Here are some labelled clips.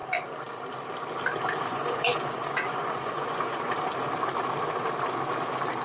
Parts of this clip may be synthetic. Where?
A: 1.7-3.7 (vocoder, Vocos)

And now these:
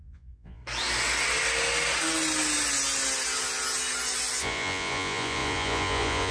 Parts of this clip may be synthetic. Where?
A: 0.0-0.6 (vocoder, Vocos); 4.4-6.3